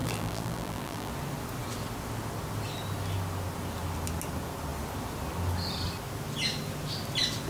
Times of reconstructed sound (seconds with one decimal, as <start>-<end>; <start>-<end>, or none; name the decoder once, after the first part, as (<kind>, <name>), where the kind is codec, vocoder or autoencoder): 0.0-1.1 (vocoder, BigVGAN v2)